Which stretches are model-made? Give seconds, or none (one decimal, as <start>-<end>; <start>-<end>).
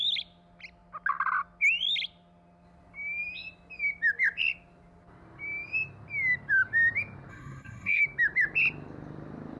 7.3-8.0